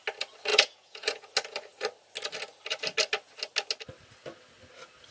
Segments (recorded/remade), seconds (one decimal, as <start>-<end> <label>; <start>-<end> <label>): 0.0-0.5 recorded; 0.5-1.2 remade; 1.2-5.1 recorded